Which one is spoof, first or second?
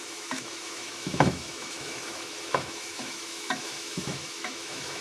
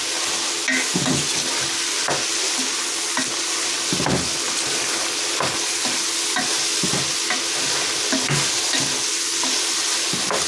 first